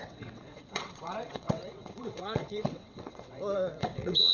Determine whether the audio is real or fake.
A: fake